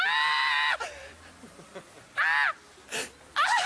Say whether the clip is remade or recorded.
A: recorded